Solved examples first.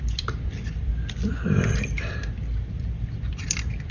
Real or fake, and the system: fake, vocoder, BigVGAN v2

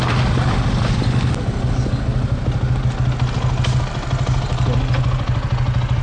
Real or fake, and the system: real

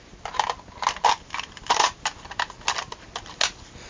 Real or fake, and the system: real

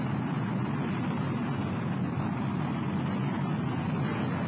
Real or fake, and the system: real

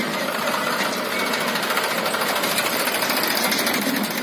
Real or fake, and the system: real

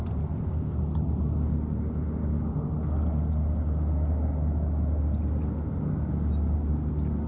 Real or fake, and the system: real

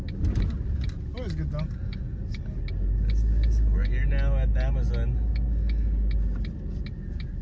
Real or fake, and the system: real